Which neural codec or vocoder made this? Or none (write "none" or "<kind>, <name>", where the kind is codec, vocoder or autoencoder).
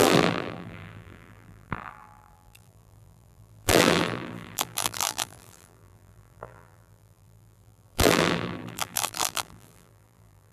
vocoder, BigVGAN v2